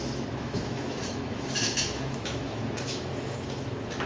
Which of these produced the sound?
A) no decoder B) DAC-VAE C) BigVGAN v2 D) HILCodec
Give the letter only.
B